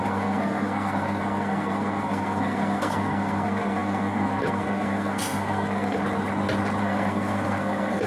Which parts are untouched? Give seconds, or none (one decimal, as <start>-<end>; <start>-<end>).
6.0-6.8